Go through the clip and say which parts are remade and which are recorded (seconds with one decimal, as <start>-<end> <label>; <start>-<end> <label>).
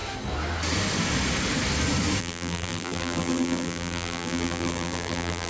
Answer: 0.0-2.2 recorded; 2.2-5.5 remade